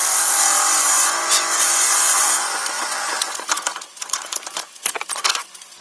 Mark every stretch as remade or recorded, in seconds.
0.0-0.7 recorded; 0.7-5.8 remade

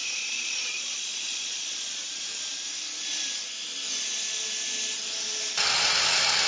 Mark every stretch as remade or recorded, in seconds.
0.0-2.0 remade; 2.0-6.5 recorded

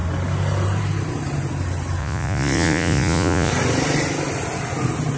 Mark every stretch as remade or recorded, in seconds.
0.0-2.0 recorded; 2.0-3.5 remade; 3.5-5.2 recorded

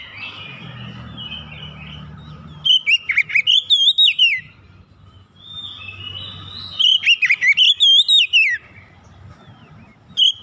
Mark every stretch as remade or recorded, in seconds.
0.0-10.4 recorded

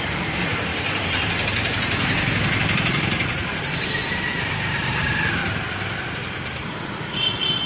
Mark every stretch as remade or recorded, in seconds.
0.0-4.0 remade; 4.0-4.5 recorded; 4.5-5.4 remade; 5.4-6.1 recorded; 6.1-7.7 remade

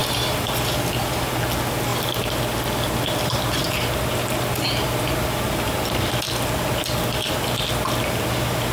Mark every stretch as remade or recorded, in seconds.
0.0-1.3 remade; 1.3-8.7 recorded

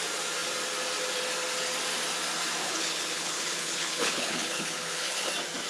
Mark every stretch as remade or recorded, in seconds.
0.0-2.6 recorded; 2.6-5.3 remade; 5.3-5.7 recorded

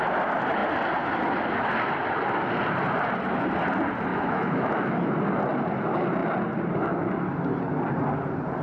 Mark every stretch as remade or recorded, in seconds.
0.0-4.1 recorded; 4.1-4.9 remade; 4.9-8.6 recorded